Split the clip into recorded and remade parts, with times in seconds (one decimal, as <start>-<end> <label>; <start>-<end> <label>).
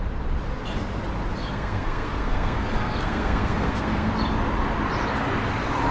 0.0-1.4 recorded; 1.4-4.1 remade; 4.1-5.9 recorded